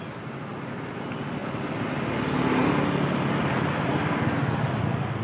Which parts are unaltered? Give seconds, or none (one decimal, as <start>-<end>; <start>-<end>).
0.0-5.2